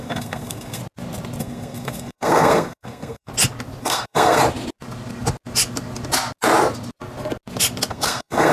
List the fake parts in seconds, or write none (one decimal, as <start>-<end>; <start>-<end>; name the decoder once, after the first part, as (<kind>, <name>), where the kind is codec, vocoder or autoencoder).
0.0-0.8 (codec, SNAC); 1.4-3.3; 3.8-4.4; 7.9-8.5

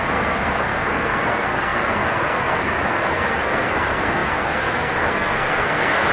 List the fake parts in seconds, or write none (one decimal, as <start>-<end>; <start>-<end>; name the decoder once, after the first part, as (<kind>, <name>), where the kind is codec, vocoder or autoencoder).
0.0-6.1 (codec, SNAC)

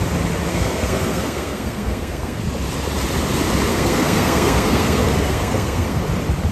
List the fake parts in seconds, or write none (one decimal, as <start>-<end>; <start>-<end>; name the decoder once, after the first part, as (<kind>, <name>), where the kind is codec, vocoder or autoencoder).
0.5-2.4 (codec, SNAC); 3.7-6.0